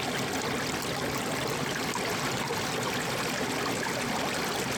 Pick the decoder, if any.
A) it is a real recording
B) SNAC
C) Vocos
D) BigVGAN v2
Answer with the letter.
A